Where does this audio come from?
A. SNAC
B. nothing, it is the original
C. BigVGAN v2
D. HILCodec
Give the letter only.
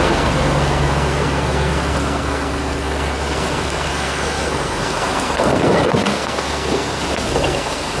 A